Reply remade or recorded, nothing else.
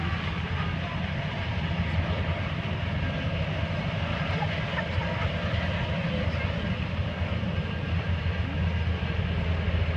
recorded